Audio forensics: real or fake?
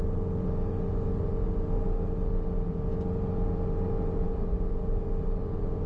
real